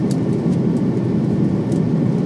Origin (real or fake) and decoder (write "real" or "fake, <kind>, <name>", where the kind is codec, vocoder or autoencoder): real